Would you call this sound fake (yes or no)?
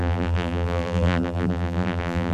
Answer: yes